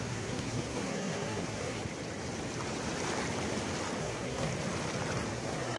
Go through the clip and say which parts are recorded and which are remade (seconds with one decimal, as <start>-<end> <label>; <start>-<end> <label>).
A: 0.0-1.8 remade; 1.8-4.0 recorded; 4.0-4.5 remade; 4.5-5.3 recorded; 5.3-5.8 remade